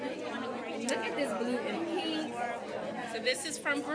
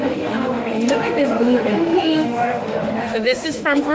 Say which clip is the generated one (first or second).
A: second